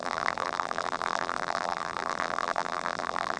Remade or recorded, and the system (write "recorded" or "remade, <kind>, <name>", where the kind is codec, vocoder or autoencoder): remade, vocoder, BigVGAN v2